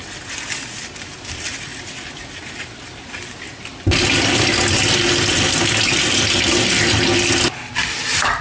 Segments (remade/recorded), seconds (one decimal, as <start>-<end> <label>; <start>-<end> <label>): 0.0-8.4 recorded